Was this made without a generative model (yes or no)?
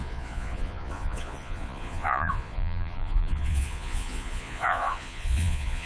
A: no